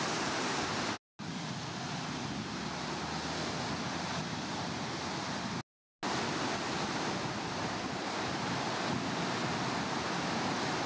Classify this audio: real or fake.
real